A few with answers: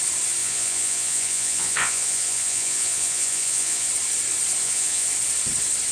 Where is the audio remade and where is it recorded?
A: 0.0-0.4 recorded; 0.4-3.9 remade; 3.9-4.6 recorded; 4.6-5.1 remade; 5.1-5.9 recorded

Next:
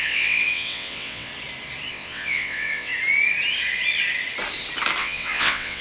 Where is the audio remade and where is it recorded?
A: 0.0-1.3 remade; 1.3-1.9 recorded; 1.9-2.9 remade; 2.9-5.0 recorded; 5.0-5.8 remade

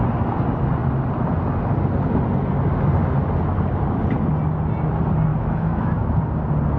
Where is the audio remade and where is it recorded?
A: 0.0-5.3 recorded; 5.3-6.2 remade; 6.2-6.8 recorded

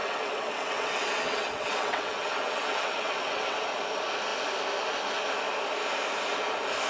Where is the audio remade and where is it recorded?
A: 0.0-3.7 remade; 3.7-6.9 recorded